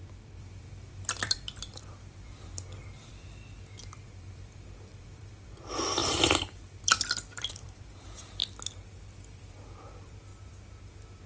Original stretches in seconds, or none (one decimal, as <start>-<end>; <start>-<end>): 8.4-9.4; 10.3-11.3

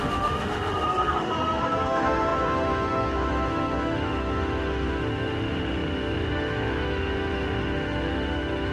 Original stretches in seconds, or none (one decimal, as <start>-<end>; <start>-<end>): none